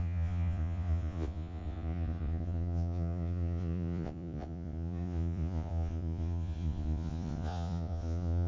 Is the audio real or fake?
fake